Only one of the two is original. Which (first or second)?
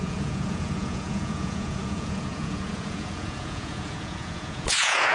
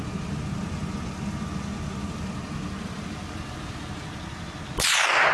second